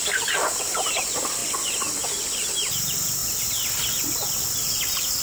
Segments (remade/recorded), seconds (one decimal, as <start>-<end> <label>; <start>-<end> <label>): 0.0-1.4 remade; 1.4-2.3 recorded; 2.3-3.2 remade; 3.2-4.6 recorded; 4.6-5.2 remade